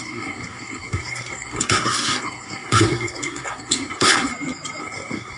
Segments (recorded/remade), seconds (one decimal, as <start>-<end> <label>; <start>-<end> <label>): 0.0-4.3 remade; 4.3-4.8 recorded; 4.8-5.4 remade

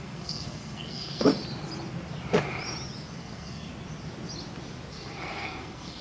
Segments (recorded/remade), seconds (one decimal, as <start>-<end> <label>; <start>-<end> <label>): 0.0-1.3 remade; 1.3-3.2 recorded; 3.2-3.7 remade; 3.7-4.9 recorded; 4.9-6.0 remade